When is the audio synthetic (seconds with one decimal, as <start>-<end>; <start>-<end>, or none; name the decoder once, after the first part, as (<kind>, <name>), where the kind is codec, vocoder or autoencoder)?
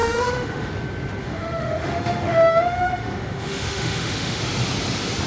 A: 0.0-0.7 (autoencoder, DAC-VAE); 1.2-4.4